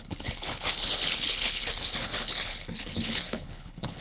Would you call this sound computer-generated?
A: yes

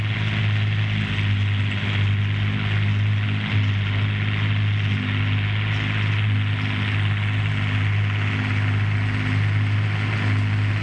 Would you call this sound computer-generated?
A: no